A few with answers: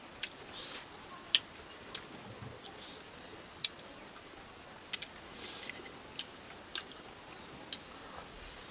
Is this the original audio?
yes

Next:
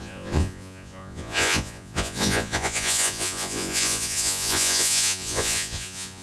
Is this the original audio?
no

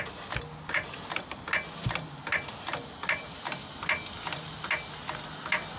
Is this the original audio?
yes